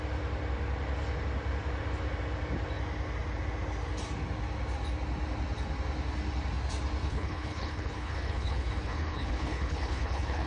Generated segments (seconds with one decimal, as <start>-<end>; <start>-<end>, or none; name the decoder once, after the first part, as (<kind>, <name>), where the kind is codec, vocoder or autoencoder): 7.0-10.5 (codec, HILCodec)